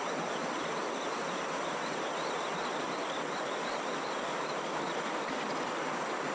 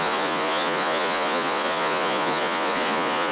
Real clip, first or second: first